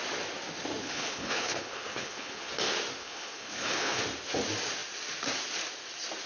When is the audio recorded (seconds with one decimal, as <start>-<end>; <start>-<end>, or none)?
0.0-0.8; 2.5-3.0; 4.0-6.3